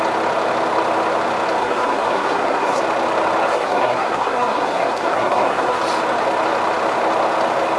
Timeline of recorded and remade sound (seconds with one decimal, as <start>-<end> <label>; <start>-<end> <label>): 0.0-1.6 recorded; 1.6-2.8 remade; 2.8-3.5 recorded; 3.5-5.8 remade; 5.8-7.8 recorded